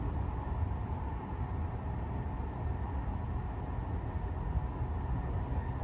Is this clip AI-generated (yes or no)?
no